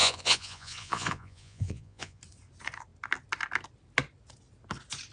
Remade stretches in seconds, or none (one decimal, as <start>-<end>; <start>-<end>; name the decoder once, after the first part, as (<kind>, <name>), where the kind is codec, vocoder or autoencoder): 0.0-2.2 (vocoder, Vocos)